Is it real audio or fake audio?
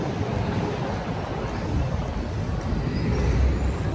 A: real